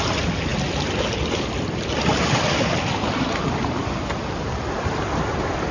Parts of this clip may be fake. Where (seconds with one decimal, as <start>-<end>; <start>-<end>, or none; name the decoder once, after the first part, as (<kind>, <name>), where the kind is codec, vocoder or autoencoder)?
none